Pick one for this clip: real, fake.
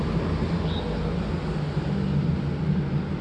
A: real